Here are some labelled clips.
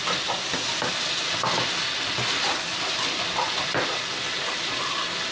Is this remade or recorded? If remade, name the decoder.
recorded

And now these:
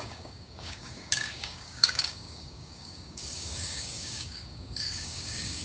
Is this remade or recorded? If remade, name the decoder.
remade, codec, DAC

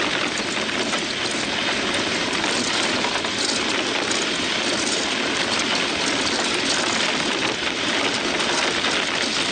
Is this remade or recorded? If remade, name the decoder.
recorded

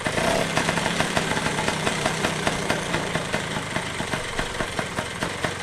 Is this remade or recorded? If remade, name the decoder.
remade, vocoder, BigVGAN v2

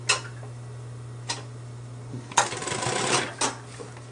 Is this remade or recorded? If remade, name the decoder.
recorded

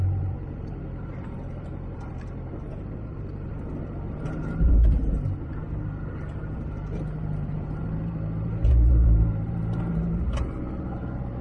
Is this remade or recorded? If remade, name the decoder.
remade, vocoder, BigVGAN v2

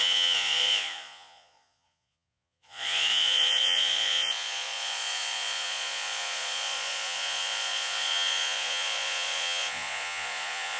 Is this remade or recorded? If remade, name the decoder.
remade, vocoder, Vocos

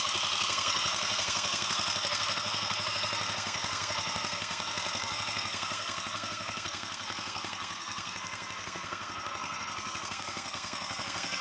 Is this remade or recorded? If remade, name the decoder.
remade, codec, SNAC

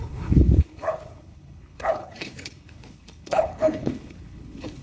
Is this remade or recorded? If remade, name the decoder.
remade, codec, HILCodec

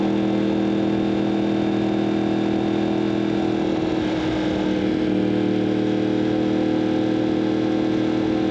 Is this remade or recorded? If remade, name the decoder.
recorded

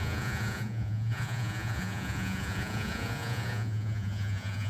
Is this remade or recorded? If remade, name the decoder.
remade, vocoder, Vocos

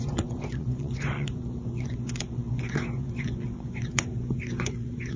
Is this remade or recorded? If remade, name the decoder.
remade, vocoder, Vocos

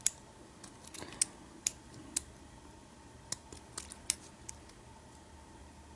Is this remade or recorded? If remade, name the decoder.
recorded